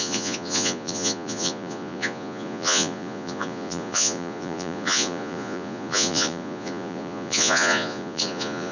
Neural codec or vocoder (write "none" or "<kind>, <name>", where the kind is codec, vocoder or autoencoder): vocoder, Vocos